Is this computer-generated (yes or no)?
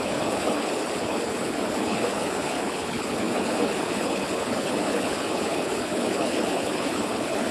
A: yes